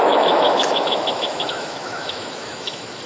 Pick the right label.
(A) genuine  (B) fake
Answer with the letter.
B